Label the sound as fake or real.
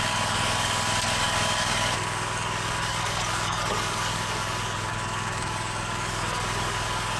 fake